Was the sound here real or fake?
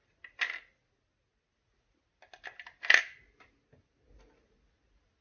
real